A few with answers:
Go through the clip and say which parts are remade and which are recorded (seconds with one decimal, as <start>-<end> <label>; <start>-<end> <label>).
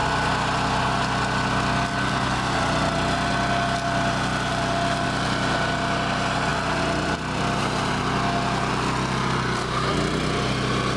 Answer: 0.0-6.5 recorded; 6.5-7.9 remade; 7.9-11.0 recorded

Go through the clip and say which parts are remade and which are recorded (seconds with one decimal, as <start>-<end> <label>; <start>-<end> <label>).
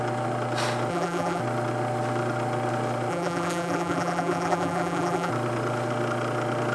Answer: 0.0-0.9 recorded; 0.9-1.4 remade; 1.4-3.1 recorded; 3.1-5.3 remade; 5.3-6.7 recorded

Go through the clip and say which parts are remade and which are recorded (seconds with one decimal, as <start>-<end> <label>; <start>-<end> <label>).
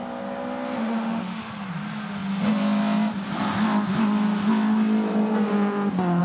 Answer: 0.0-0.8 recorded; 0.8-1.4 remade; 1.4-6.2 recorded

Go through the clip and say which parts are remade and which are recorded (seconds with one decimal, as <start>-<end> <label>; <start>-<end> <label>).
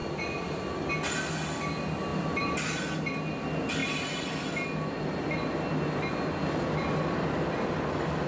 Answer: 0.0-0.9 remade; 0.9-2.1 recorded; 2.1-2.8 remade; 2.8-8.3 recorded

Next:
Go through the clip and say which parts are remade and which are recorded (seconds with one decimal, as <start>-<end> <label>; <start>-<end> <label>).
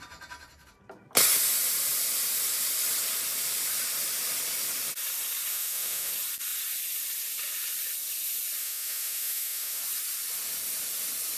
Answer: 0.0-5.5 recorded; 5.5-6.1 remade; 6.1-8.6 recorded; 8.6-9.8 remade; 9.8-11.4 recorded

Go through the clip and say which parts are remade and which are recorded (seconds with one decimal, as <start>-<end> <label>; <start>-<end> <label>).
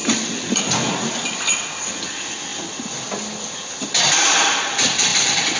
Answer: 0.0-0.6 remade; 0.6-5.1 recorded; 5.1-5.6 remade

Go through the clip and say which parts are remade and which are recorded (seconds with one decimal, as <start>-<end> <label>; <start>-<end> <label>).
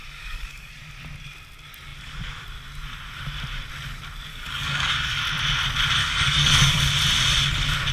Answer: 0.0-0.7 remade; 0.7-4.3 recorded; 4.3-5.2 remade; 5.2-6.0 recorded; 6.0-6.8 remade; 6.8-7.9 recorded